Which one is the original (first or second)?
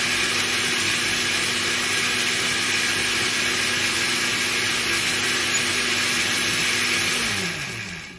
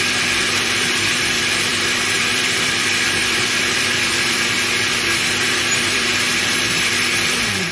first